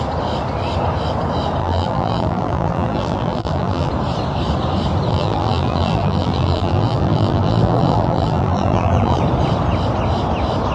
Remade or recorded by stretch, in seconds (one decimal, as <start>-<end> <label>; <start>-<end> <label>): 0.0-1.6 recorded; 1.6-3.9 remade; 3.9-5.1 recorded; 5.1-9.2 remade; 9.2-10.7 recorded